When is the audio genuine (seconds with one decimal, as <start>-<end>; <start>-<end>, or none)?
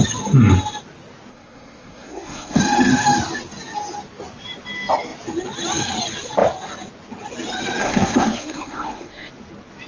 0.0-1.3; 2.6-7.8; 9.3-9.9